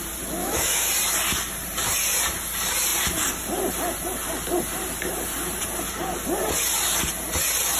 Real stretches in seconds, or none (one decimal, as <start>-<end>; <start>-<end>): 0.0-0.4; 0.9-7.8